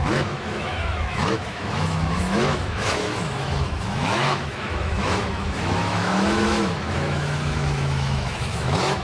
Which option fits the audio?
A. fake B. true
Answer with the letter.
A